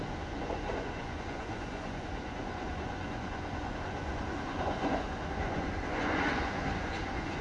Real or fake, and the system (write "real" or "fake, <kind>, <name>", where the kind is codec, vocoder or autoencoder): fake, vocoder, Vocos